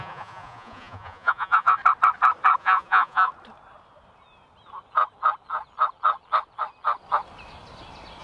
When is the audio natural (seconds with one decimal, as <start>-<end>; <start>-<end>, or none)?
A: 1.8-2.6; 3.3-8.2